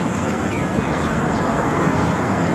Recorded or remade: remade